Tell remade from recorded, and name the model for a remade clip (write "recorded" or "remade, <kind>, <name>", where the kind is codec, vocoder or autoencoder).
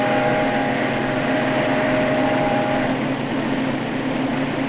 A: recorded